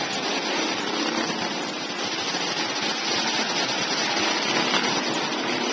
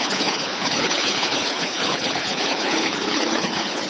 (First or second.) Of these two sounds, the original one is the first